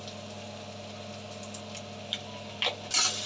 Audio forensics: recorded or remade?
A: recorded